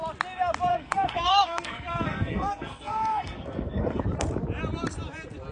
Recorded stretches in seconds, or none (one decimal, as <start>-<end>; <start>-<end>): 0.0-0.7; 4.0-5.5